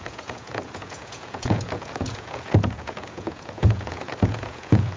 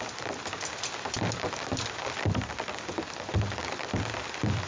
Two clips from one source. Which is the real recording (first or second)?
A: second